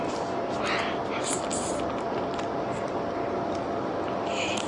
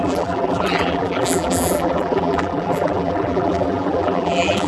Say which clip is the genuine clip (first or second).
first